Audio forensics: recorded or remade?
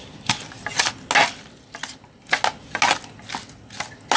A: recorded